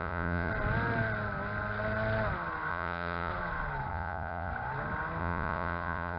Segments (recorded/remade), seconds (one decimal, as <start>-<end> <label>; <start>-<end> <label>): 0.0-0.5 remade; 0.5-2.7 recorded; 2.7-3.3 remade; 3.3-3.9 recorded; 3.9-4.5 remade; 4.5-5.2 recorded; 5.2-6.2 remade